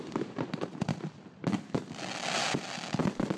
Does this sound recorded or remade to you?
recorded